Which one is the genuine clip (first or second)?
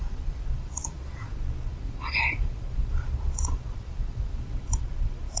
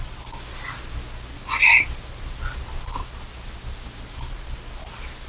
second